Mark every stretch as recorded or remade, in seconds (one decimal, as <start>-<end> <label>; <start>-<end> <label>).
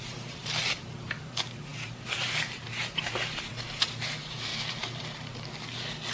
0.0-4.5 remade; 4.5-6.1 recorded